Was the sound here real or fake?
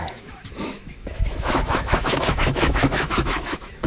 fake